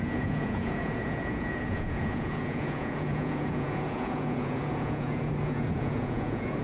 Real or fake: fake